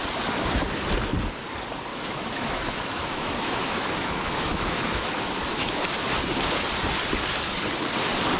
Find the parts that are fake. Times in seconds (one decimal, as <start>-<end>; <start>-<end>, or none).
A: 1.9-5.8